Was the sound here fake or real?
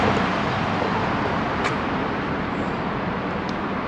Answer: real